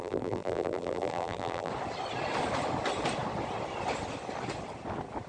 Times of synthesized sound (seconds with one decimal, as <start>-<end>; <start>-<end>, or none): 0.0-1.7